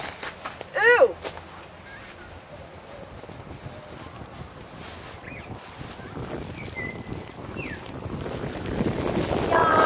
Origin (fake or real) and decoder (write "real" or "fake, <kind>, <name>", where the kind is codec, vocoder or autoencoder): real